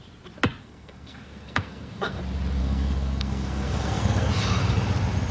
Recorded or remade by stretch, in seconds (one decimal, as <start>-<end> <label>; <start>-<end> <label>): 0.0-0.6 recorded; 0.6-2.2 remade; 2.2-2.6 recorded; 2.6-4.3 remade; 4.3-5.3 recorded